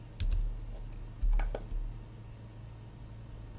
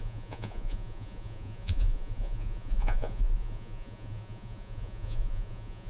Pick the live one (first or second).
first